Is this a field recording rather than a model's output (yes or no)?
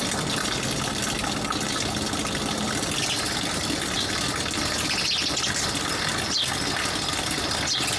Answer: yes